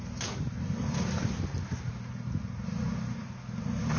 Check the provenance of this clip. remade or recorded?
remade